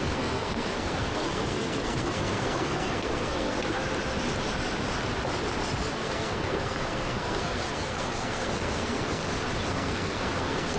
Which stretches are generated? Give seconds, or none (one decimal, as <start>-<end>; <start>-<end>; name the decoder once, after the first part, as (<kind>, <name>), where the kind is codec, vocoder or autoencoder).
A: 0.0-3.8 (codec, SNAC); 5.9-9.2; 9.7-10.8